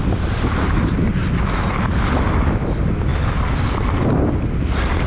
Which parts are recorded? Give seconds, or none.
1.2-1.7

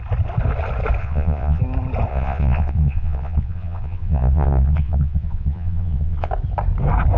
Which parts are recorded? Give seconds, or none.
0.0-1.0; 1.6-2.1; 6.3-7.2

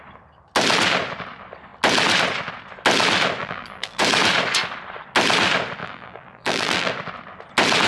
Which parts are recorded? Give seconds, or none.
0.0-3.4; 4.0-5.8; 6.9-7.9